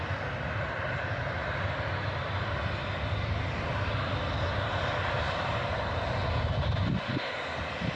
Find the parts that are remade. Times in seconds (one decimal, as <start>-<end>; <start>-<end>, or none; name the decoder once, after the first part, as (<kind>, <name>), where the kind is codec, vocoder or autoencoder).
none